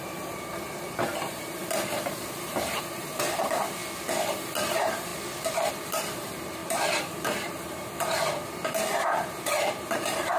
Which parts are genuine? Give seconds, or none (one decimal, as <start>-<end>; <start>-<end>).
3.8-4.6; 5.1-5.7